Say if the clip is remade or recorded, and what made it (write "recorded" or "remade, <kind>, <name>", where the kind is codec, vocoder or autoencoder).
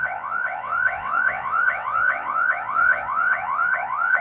remade, vocoder, WaveNeXt